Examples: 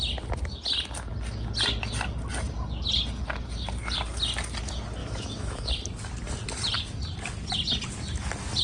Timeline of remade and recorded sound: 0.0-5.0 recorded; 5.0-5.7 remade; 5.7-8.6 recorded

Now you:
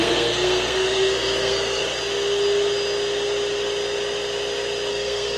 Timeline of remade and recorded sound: 0.0-1.8 remade; 1.8-4.9 recorded; 4.9-5.4 remade

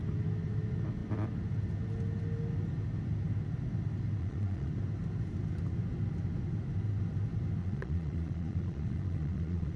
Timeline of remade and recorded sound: 0.0-4.2 recorded; 4.2-4.7 remade; 4.7-7.6 recorded; 7.6-9.8 remade

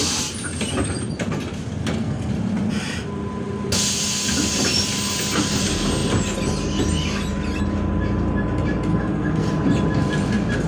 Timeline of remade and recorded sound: 0.0-1.8 recorded; 1.8-2.3 remade; 2.3-8.9 recorded; 8.9-9.5 remade; 9.5-10.7 recorded

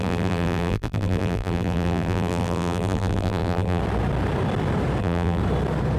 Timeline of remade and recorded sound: 0.0-3.8 remade; 3.8-5.0 recorded; 5.0-5.4 remade; 5.4-6.0 recorded

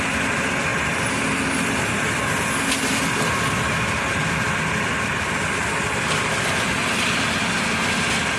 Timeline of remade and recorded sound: 0.0-8.4 recorded

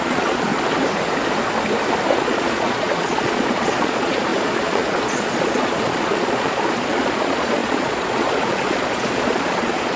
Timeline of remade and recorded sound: 0.0-0.5 remade; 0.5-2.1 recorded; 2.1-10.0 remade